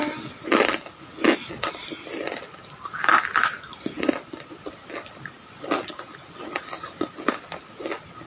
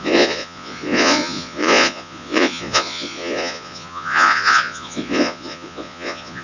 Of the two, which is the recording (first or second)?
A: first